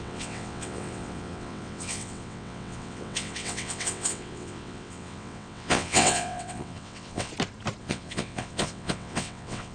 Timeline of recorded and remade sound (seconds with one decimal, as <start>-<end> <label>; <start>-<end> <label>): 0.0-7.3 remade; 7.3-7.8 recorded; 7.8-9.7 remade